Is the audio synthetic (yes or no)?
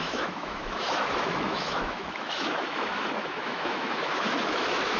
yes